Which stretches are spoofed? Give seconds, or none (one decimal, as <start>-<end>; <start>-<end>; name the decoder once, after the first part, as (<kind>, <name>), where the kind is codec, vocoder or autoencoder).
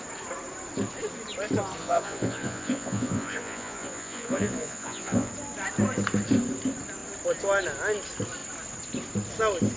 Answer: 1.8-5.3 (vocoder, Vocos)